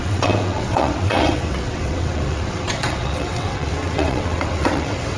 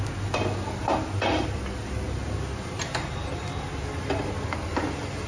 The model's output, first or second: first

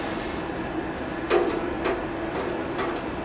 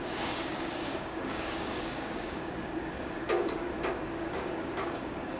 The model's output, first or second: second